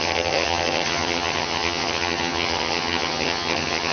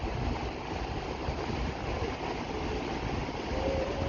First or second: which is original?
second